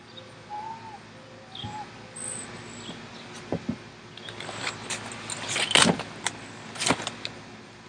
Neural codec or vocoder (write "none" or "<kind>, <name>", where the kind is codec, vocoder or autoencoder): none